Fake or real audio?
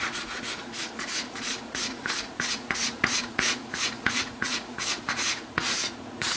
fake